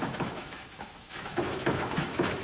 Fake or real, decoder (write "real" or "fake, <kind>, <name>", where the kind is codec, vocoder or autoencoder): fake, autoencoder, DAC-VAE